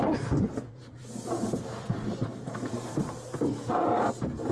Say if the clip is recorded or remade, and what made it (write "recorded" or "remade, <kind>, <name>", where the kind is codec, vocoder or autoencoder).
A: remade, vocoder, BigVGAN v2